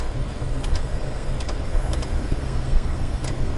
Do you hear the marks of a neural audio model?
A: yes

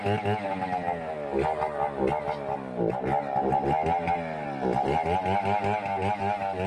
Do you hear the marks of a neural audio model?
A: no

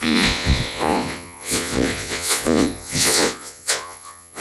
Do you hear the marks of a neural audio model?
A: yes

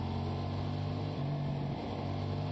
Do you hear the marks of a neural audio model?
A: no